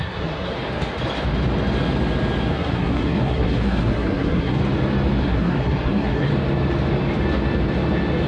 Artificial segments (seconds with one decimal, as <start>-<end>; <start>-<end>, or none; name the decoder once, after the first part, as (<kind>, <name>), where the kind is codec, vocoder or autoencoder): 0.0-0.5 (codec, SNAC); 2.5-4.6; 5.2-6.3